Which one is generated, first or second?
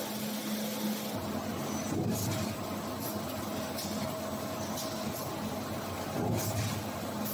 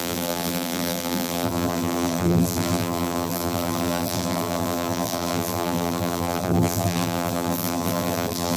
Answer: second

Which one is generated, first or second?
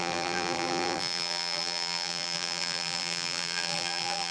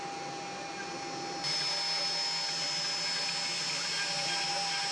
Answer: first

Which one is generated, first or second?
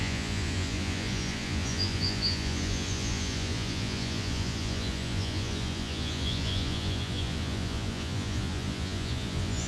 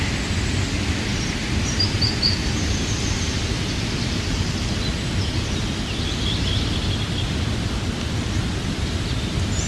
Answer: first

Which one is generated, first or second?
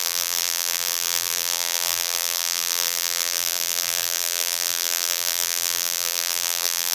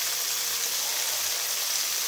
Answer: first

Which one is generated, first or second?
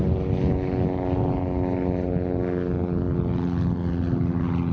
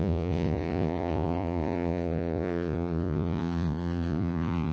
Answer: second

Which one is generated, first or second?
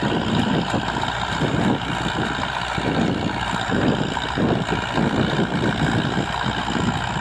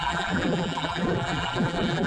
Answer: second